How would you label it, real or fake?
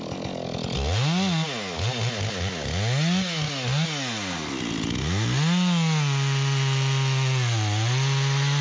real